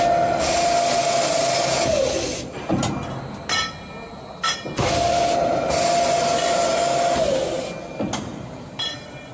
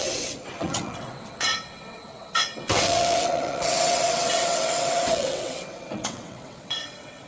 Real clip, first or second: first